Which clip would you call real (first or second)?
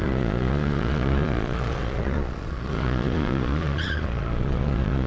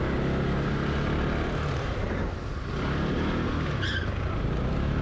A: second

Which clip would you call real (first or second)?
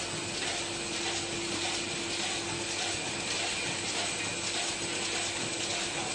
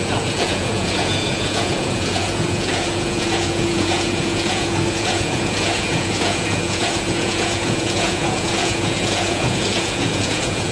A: first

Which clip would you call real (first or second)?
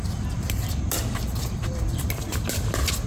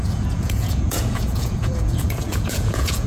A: first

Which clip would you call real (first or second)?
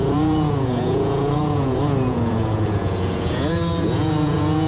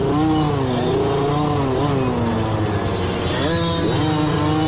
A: second